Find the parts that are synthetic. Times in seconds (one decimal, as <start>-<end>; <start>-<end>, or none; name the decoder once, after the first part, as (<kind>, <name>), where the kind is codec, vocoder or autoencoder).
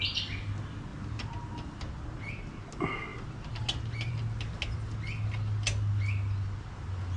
none